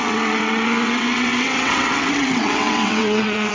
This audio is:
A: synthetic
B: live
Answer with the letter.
A